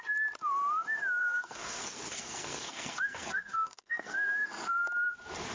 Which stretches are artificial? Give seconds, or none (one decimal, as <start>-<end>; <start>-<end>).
1.2-4.5